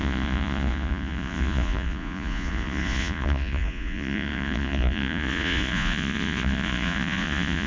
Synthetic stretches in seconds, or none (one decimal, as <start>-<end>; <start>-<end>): 0.0-7.7